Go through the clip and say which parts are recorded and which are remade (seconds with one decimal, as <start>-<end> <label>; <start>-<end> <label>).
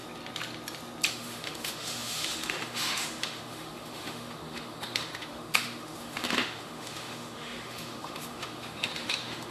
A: 0.0-1.1 recorded; 1.1-9.5 remade